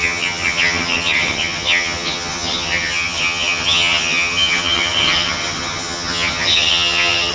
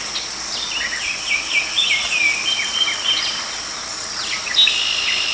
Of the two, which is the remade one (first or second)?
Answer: first